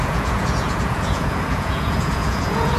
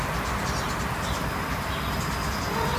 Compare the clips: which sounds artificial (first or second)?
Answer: first